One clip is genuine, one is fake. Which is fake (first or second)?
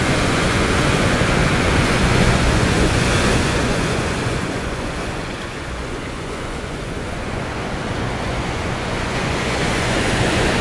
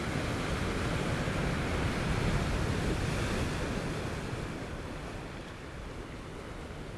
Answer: first